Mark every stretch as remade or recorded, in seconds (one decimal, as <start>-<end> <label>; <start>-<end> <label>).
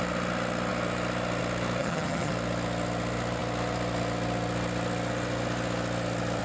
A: 0.0-1.8 recorded; 1.8-2.3 remade; 2.3-6.4 recorded